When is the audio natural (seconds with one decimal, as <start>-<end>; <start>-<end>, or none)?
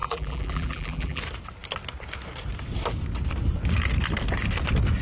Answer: 1.2-5.0